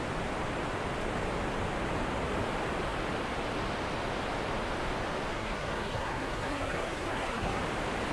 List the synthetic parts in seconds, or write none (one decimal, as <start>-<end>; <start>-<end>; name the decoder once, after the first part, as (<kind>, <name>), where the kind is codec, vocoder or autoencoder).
5.3-7.6 (codec, SNAC)